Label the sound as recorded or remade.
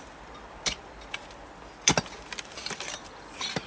remade